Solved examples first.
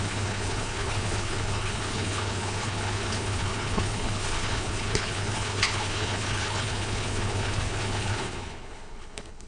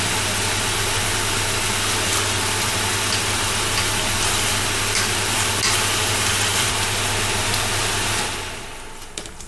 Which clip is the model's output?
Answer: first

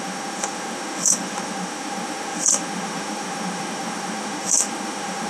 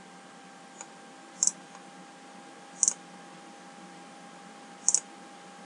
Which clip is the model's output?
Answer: first